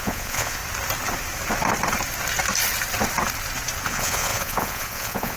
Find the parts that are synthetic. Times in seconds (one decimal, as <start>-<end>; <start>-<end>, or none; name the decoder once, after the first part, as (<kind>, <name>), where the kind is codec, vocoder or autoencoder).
0.0-0.6 (vocoder, Vocos); 3.8-5.4

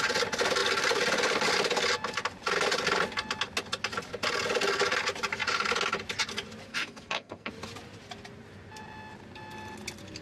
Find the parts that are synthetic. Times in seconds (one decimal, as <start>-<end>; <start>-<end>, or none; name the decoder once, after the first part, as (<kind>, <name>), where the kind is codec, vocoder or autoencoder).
6.7-7.5 (codec, SNAC)

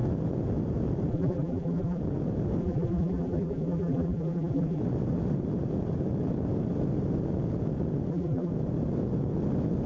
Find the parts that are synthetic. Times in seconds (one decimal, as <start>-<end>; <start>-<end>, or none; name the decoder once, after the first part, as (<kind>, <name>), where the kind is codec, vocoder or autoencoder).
1.1-2.0 (vocoder, BigVGAN v2); 2.6-4.8; 8.1-8.5

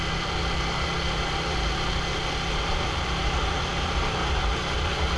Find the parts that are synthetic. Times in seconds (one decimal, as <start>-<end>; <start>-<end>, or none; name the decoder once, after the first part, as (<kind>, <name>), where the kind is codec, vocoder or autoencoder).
2.7-3.4 (vocoder, BigVGAN v2); 4.2-5.2

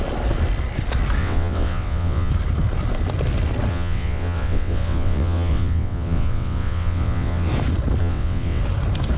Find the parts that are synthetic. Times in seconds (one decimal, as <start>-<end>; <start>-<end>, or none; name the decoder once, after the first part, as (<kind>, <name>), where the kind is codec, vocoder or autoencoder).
1.2-2.3 (vocoder, WaveNeXt); 3.7-7.5; 8.0-8.6

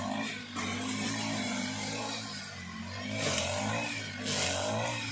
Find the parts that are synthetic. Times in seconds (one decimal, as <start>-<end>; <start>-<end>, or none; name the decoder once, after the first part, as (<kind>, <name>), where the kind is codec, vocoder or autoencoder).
0.7-3.7 (vocoder, BigVGAN v2)